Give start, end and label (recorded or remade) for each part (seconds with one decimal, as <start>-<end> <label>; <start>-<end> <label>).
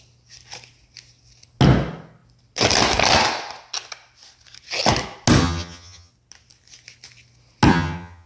0.0-5.4 recorded; 5.4-6.1 remade; 6.1-7.7 recorded; 7.7-8.3 remade